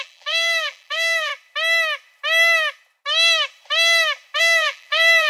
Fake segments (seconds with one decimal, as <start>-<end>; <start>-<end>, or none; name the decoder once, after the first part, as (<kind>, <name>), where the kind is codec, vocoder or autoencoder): 0.0-1.3 (vocoder, BigVGAN v2); 4.4-5.3